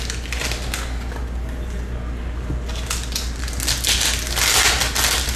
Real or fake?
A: real